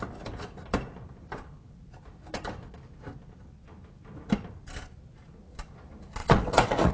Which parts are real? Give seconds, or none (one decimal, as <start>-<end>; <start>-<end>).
0.0-6.2